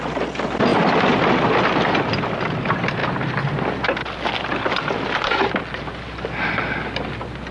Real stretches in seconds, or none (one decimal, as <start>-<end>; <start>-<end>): 0.0-0.7; 1.3-7.5